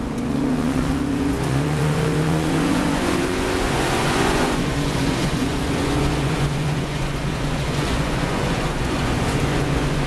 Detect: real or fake fake